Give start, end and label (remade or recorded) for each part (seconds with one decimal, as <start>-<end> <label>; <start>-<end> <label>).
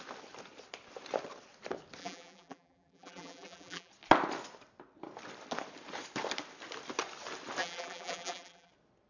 0.0-2.0 recorded; 2.0-3.9 remade; 3.9-7.6 recorded; 7.6-8.7 remade; 8.7-9.1 recorded